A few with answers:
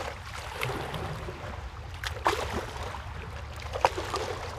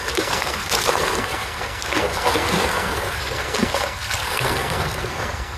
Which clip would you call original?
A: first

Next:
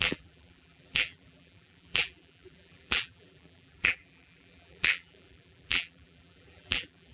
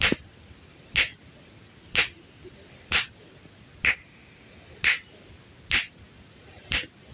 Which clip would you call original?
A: second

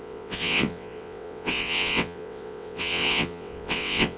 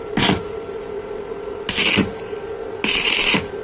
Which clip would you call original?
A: second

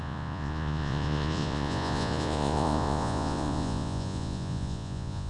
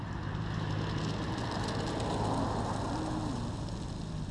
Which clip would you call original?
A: second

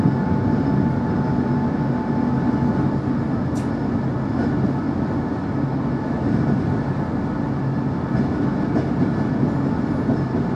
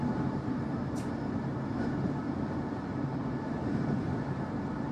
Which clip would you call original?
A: first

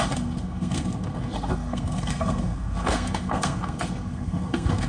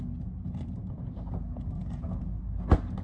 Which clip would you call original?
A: second